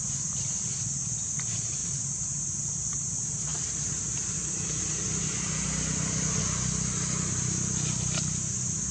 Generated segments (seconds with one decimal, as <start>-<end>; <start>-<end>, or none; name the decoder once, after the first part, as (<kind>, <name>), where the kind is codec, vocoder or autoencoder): 1.8-2.4 (vocoder, BigVGAN v2)